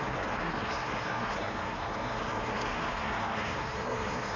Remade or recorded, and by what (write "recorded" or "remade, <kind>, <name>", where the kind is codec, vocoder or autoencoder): remade, codec, SNAC